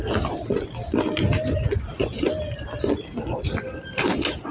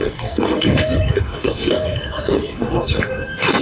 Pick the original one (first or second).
first